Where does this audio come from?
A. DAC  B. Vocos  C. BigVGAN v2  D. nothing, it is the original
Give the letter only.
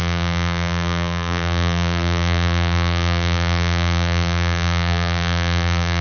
C